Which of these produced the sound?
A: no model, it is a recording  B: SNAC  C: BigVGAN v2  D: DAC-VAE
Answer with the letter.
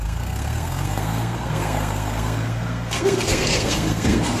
B